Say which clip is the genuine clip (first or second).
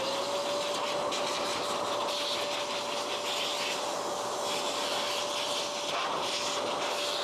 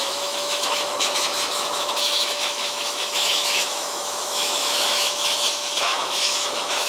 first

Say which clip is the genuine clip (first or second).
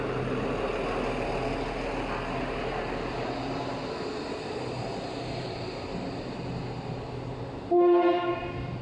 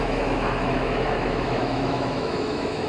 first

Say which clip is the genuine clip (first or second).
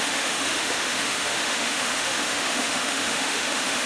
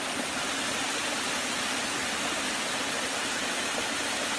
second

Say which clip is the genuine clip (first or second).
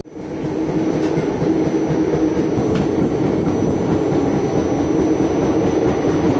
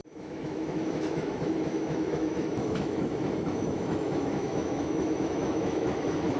first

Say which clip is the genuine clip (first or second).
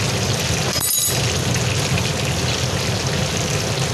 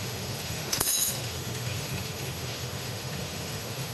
first